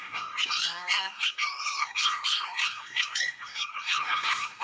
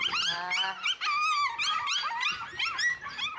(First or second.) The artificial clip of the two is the first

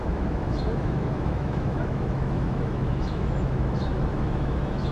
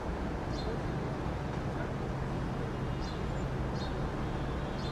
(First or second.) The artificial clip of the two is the first